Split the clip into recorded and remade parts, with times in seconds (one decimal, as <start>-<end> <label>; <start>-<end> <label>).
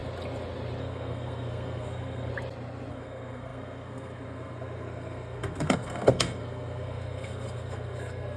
0.0-0.8 recorded; 0.8-2.3 remade; 2.3-2.9 recorded; 2.9-8.4 remade